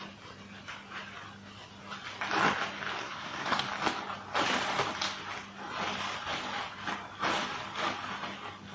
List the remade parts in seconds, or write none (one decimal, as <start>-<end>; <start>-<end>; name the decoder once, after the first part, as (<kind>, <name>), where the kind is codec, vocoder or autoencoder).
3.0-3.6 (codec, SNAC)